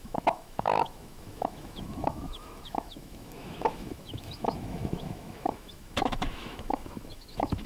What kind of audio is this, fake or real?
fake